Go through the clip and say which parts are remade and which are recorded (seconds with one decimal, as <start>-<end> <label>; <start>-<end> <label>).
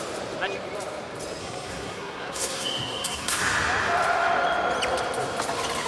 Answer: 0.0-1.4 recorded; 1.4-3.4 remade; 3.4-5.9 recorded